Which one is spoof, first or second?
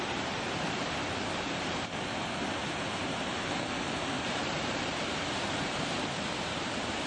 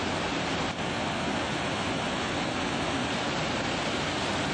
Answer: first